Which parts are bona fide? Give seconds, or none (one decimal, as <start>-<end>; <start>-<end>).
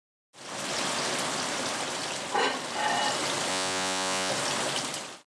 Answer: 0.0-3.5; 4.3-5.3